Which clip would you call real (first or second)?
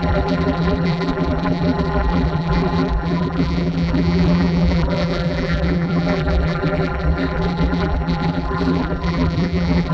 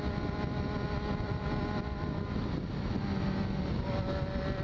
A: second